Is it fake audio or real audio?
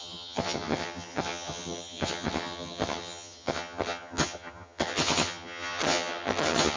fake